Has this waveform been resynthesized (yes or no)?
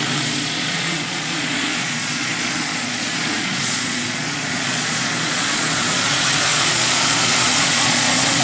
yes